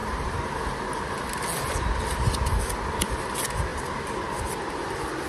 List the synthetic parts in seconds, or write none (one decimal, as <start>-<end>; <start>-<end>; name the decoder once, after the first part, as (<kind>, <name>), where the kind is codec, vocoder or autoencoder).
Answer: none